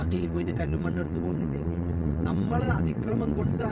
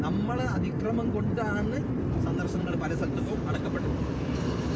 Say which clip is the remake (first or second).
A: first